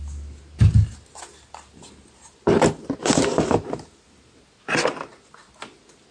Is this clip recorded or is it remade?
recorded